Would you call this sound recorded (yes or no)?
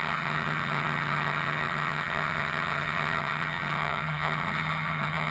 no